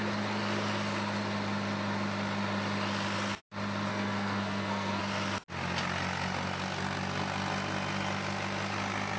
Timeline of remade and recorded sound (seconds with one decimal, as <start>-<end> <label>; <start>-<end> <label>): 0.0-3.9 recorded; 3.9-5.0 remade; 5.0-9.2 recorded